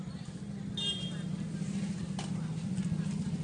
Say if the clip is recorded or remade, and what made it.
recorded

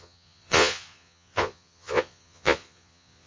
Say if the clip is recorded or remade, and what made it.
remade, vocoder, Vocos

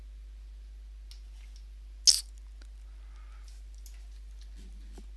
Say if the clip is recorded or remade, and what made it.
recorded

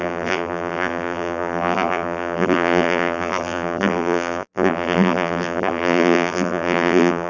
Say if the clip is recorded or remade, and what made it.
remade, vocoder, BigVGAN v2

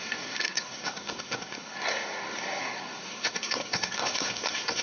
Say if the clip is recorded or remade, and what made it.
remade, codec, SNAC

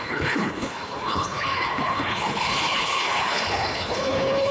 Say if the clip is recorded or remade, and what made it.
remade, codec, HILCodec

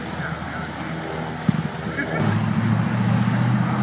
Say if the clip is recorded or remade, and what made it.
recorded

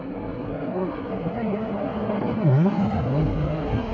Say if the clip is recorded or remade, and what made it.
remade, codec, SNAC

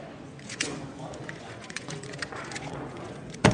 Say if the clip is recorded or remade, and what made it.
remade, vocoder, Vocos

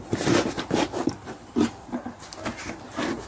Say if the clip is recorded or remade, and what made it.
recorded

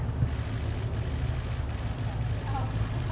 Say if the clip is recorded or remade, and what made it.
recorded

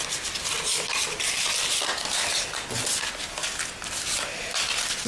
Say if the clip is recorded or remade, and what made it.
recorded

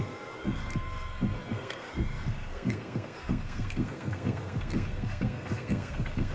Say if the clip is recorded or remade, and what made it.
remade, codec, SNAC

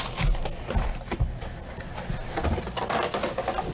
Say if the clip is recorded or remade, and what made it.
recorded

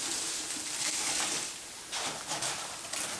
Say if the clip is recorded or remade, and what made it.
recorded